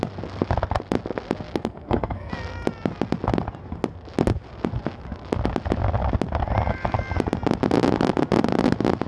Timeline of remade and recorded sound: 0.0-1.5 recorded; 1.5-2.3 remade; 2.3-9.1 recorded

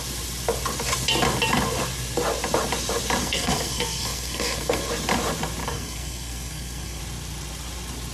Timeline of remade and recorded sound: 0.0-3.2 recorded; 3.2-4.9 remade; 4.9-5.6 recorded; 5.6-7.0 remade; 7.0-8.1 recorded

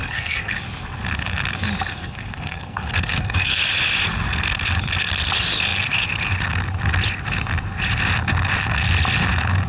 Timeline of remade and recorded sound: 0.0-0.5 remade; 0.5-1.9 recorded; 1.9-3.6 remade; 3.6-9.7 recorded

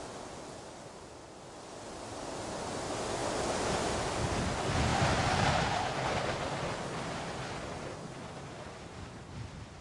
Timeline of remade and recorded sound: 0.0-9.8 recorded